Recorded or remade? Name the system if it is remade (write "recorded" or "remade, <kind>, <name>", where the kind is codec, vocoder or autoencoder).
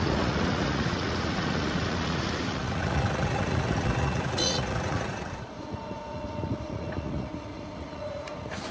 remade, vocoder, Vocos